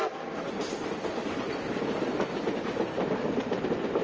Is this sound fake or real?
real